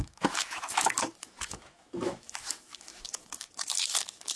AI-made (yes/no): yes